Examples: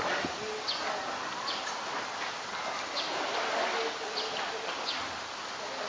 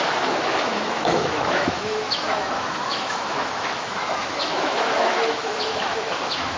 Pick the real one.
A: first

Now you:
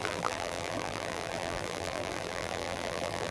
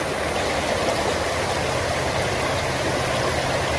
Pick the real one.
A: second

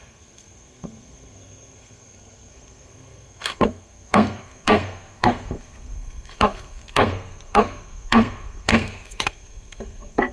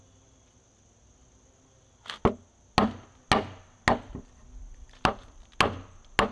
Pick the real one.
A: second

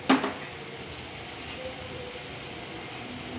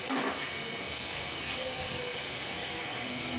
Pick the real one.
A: first